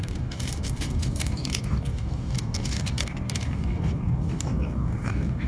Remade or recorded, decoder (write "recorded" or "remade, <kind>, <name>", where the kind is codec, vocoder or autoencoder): remade, codec, DAC